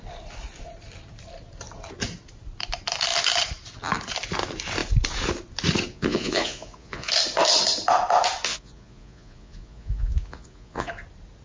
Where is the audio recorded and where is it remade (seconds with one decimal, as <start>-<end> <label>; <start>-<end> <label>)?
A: 0.0-5.9 recorded; 5.9-7.1 remade; 7.1-8.5 recorded; 8.5-10.9 remade; 10.9-11.4 recorded